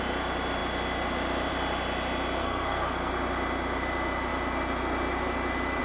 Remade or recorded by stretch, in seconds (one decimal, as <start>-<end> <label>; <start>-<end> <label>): 0.0-2.4 recorded; 2.4-3.1 remade; 3.1-5.8 recorded